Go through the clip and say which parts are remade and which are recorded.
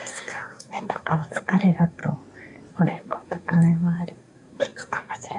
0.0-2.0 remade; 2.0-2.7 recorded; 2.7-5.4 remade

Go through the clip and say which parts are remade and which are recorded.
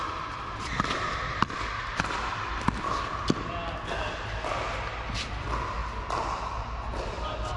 0.0-7.6 recorded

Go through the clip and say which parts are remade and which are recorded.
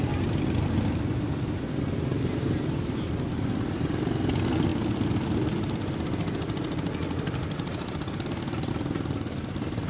0.0-9.9 recorded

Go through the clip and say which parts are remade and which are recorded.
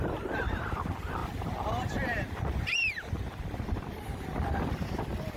0.0-5.4 remade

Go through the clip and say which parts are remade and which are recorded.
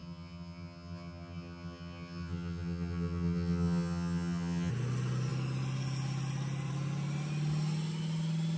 0.0-4.7 remade; 4.7-8.6 recorded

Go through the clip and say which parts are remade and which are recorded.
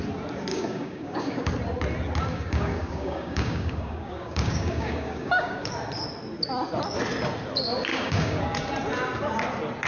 0.0-0.5 recorded; 0.5-1.5 remade; 1.5-2.3 recorded; 2.3-5.7 remade; 5.7-7.9 recorded; 7.9-8.4 remade; 8.4-9.9 recorded